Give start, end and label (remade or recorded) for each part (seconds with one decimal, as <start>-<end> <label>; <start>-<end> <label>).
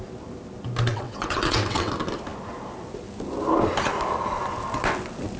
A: 0.0-0.9 recorded; 0.9-1.9 remade; 1.9-5.4 recorded